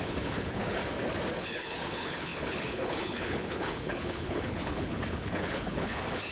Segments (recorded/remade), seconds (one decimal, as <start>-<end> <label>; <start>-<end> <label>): 0.0-0.8 remade; 0.8-1.4 recorded; 1.4-6.3 remade